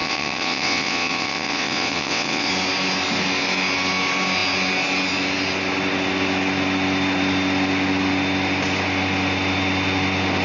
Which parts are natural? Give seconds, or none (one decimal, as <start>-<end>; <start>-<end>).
2.5-10.4